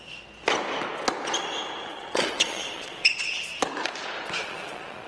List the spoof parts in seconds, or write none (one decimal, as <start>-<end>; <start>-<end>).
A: 1.9-3.3; 4.4-5.1